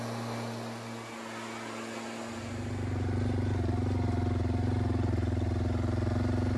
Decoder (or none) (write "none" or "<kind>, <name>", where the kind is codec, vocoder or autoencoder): none